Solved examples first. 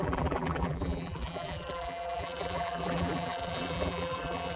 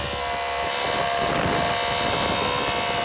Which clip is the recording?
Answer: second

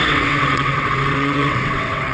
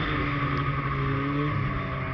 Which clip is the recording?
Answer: second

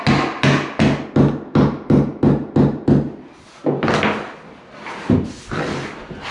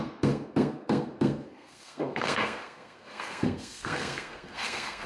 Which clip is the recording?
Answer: first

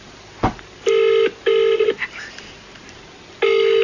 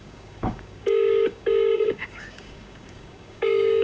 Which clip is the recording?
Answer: first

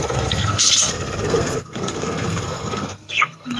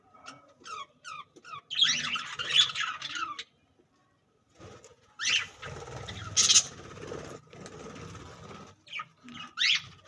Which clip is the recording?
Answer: second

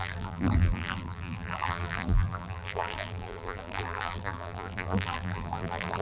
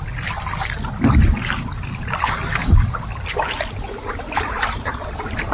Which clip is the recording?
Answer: second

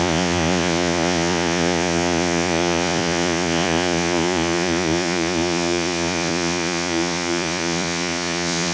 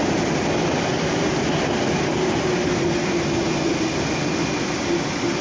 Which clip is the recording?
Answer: second